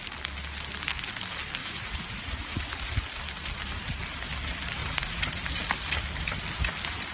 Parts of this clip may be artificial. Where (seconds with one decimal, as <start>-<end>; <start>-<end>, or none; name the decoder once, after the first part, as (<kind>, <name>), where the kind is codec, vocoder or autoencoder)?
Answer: 1.6-2.9 (vocoder, Vocos); 4.8-5.4